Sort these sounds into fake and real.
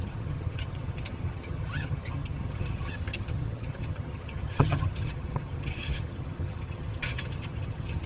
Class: fake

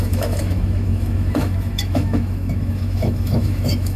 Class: fake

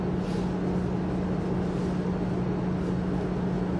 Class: real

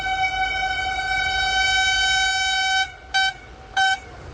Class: real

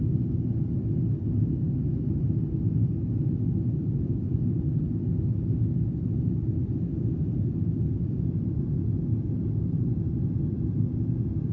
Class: real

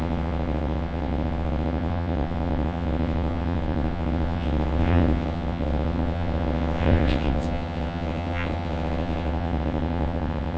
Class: fake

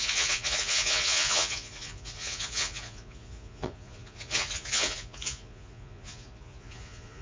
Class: fake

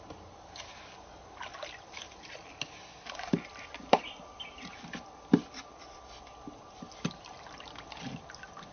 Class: real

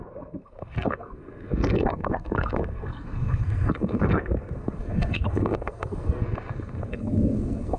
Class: fake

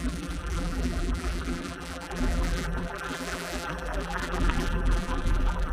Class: fake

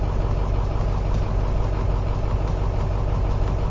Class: real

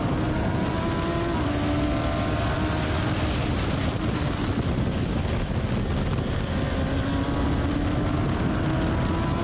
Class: real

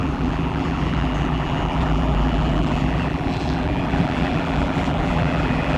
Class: fake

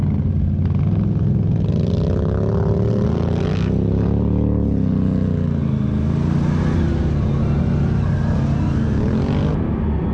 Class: real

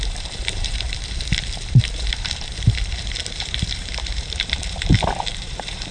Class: fake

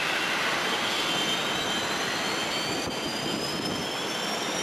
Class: real